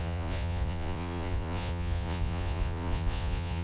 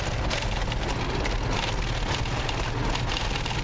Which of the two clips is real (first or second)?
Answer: second